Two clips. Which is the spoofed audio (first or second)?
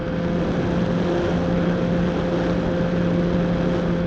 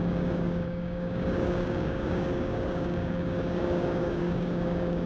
second